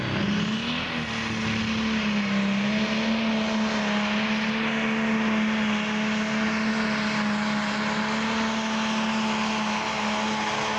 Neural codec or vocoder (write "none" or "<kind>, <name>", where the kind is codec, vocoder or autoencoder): none